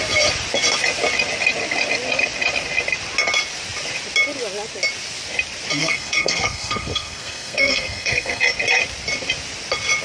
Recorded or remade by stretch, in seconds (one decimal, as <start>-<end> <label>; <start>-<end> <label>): 0.0-5.8 recorded; 5.8-8.4 remade; 8.4-10.0 recorded